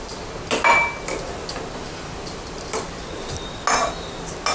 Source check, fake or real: real